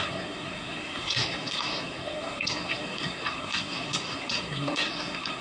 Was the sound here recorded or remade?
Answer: remade